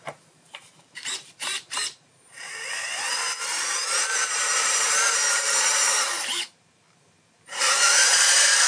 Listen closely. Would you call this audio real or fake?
fake